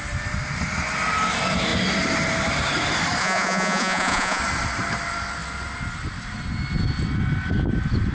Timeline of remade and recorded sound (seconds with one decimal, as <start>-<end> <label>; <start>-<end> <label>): 0.0-3.2 recorded; 3.2-4.4 remade; 4.4-8.1 recorded